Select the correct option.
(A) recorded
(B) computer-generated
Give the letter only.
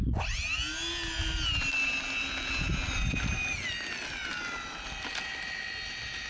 A